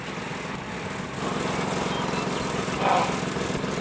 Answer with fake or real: real